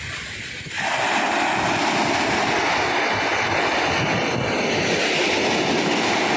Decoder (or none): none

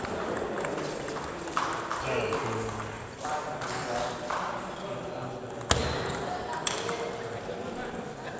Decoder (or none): none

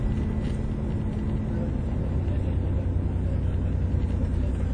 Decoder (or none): none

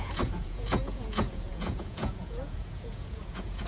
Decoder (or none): vocoder, Vocos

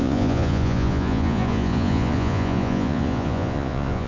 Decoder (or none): vocoder, Vocos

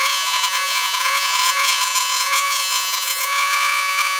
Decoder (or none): vocoder, Vocos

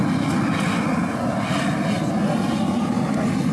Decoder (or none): none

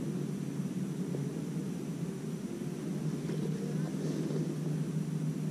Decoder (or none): none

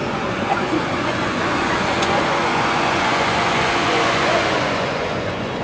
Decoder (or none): vocoder, Vocos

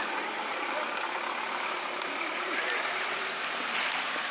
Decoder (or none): none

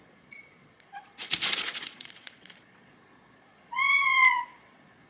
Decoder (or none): vocoder, Vocos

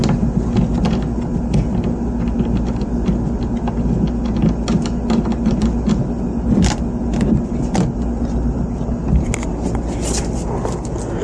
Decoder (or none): none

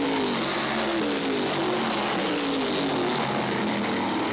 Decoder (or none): none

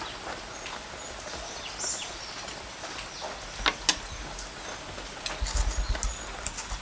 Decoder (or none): none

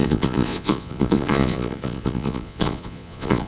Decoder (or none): vocoder, Vocos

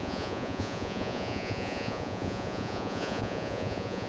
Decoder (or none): vocoder, Vocos